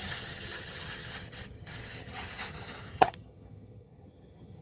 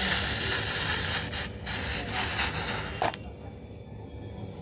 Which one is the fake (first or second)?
first